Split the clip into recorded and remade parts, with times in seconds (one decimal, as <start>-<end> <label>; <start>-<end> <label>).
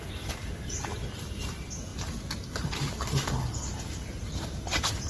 0.0-5.1 recorded